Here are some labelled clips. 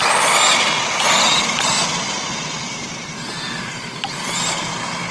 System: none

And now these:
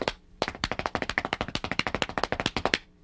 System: vocoder, BigVGAN v2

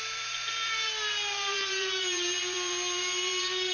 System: vocoder, BigVGAN v2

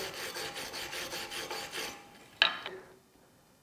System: none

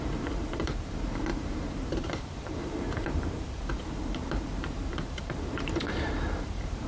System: vocoder, BigVGAN v2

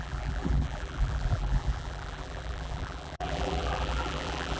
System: vocoder, BigVGAN v2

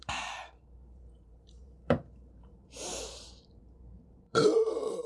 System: vocoder, BigVGAN v2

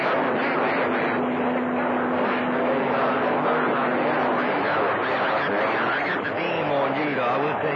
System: none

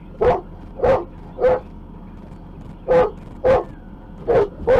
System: vocoder, BigVGAN v2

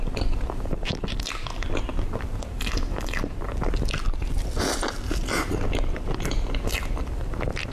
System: vocoder, BigVGAN v2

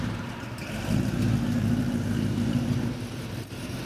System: vocoder, BigVGAN v2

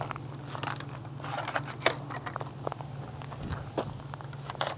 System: none